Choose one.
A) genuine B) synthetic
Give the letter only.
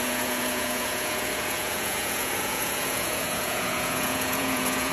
B